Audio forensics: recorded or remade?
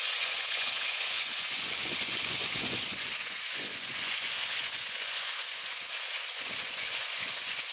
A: remade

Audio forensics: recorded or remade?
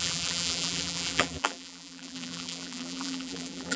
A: remade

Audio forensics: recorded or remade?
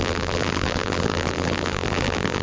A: remade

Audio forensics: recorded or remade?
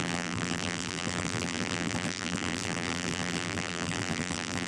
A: remade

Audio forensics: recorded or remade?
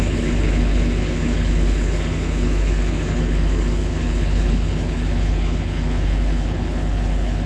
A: remade